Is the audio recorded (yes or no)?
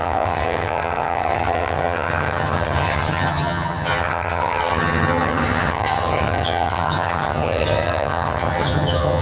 no